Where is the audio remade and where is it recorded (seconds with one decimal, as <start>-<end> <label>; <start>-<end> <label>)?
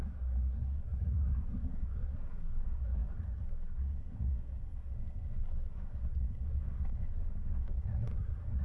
0.0-8.6 remade